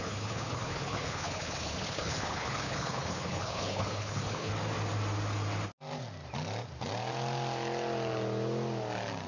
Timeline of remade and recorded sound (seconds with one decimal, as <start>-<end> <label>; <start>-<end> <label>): 0.0-4.5 remade; 4.5-9.3 recorded